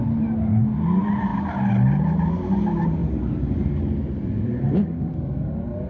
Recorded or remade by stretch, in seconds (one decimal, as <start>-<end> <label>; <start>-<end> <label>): 0.0-3.0 recorded; 3.0-4.6 remade; 4.6-5.9 recorded